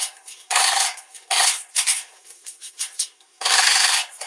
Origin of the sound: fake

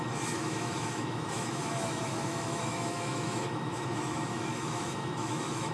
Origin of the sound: fake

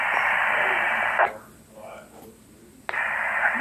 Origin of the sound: fake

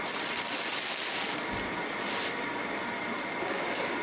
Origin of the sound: real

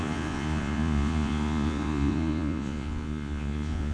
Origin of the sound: fake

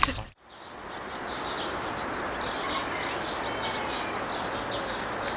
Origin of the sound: real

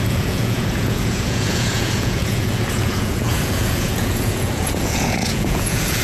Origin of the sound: fake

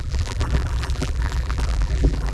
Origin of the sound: fake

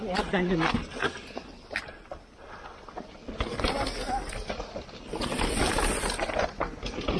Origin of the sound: real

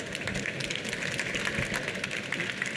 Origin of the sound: real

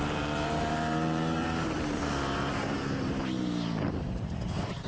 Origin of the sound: fake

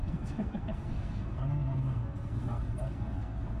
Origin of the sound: fake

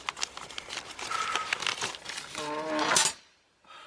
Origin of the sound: real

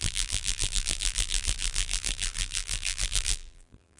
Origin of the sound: fake